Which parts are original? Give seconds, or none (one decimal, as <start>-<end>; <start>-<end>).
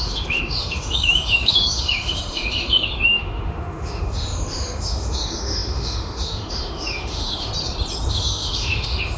7.5-8.1